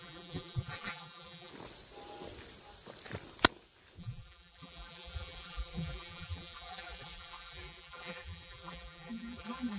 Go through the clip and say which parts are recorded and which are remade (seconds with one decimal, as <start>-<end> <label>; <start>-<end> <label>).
0.0-1.5 remade; 1.5-4.0 recorded; 4.0-9.8 remade